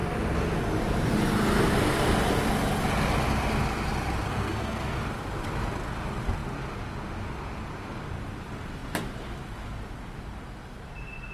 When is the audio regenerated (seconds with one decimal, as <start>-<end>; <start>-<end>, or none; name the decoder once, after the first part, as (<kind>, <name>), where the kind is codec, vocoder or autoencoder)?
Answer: 4.3-5.0 (codec, SNAC)